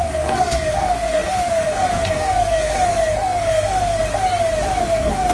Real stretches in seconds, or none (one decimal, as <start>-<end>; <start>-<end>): 4.0-4.8